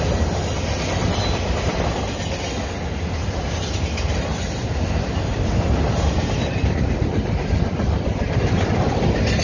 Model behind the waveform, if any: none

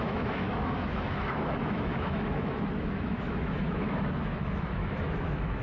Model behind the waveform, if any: autoencoder, DAC-VAE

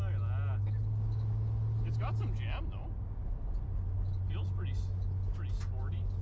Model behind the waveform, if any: none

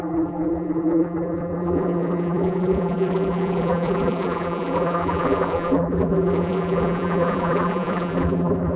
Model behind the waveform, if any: vocoder, BigVGAN v2